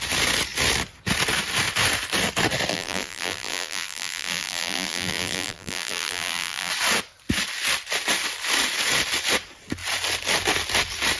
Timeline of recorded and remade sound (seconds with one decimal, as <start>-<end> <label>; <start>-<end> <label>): 0.0-2.7 recorded; 2.7-6.7 remade; 6.7-11.2 recorded